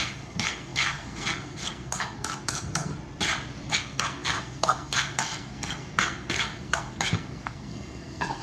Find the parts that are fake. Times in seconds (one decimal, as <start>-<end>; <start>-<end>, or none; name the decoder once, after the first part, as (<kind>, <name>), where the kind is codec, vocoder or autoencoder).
0.0-2.9 (codec, SNAC); 3.7-8.4

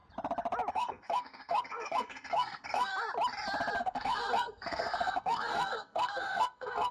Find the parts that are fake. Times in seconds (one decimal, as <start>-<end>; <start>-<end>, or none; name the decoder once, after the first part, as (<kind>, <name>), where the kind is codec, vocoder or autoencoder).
0.7-2.9 (codec, SNAC); 3.8-6.9

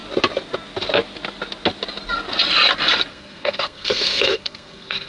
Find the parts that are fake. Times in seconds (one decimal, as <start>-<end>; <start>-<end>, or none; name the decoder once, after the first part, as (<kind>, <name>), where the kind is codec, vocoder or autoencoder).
3.1-5.1 (codec, SNAC)

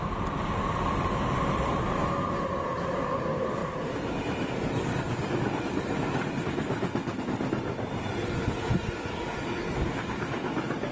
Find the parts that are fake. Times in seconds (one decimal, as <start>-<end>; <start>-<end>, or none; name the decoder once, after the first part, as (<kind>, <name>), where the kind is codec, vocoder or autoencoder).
none